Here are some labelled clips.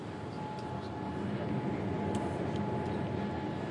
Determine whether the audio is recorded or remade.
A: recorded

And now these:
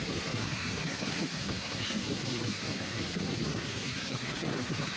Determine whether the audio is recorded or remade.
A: remade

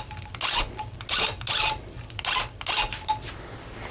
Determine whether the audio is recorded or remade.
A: recorded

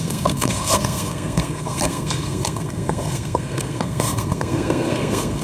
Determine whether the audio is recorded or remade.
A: remade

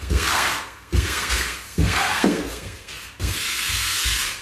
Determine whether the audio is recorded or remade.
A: remade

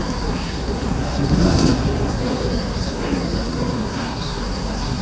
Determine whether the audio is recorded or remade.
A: remade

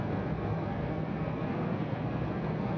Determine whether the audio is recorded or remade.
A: remade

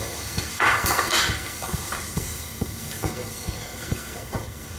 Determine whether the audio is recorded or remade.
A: remade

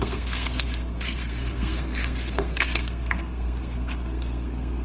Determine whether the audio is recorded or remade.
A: remade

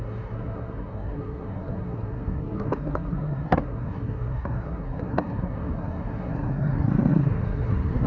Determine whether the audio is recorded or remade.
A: remade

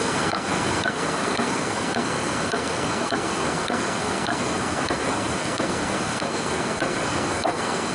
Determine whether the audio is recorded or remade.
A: remade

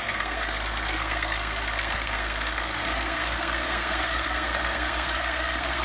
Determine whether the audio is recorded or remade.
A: remade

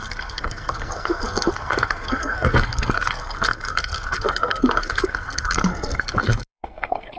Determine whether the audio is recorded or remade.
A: remade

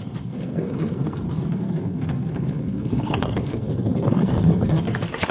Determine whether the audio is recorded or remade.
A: remade